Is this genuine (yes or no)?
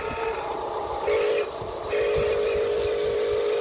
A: yes